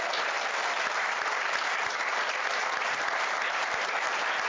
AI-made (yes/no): yes